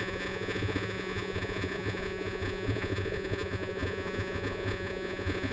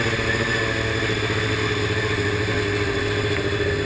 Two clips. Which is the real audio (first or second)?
second